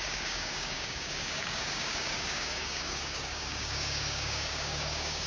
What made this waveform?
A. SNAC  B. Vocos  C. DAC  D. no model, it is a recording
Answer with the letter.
C